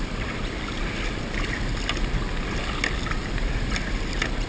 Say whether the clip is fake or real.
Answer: real